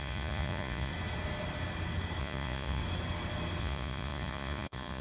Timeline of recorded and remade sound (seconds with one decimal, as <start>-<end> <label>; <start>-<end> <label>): 0.0-0.9 remade; 0.9-2.2 recorded; 2.2-2.8 remade; 2.8-3.6 recorded; 3.6-5.0 remade